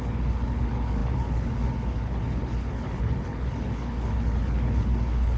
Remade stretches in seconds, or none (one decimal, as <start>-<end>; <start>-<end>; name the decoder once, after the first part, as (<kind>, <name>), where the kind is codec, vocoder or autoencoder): 0.0-5.4 (codec, HILCodec)